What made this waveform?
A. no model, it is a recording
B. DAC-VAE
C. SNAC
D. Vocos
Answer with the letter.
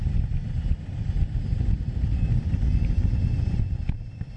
A